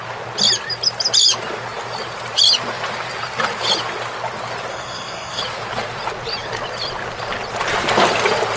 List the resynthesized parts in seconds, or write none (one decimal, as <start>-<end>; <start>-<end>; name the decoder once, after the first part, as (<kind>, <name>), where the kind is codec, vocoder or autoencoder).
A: 4.7-5.4 (codec, SNAC)